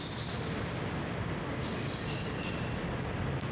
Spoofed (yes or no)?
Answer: no